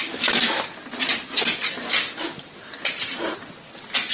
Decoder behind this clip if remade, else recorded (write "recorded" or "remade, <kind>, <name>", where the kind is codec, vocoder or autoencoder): recorded